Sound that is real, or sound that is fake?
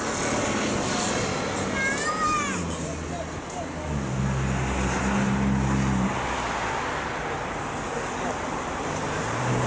real